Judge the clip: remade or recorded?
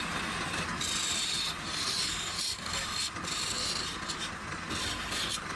recorded